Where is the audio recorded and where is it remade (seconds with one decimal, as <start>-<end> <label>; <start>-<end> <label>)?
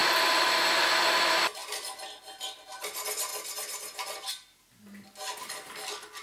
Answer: 0.0-6.2 recorded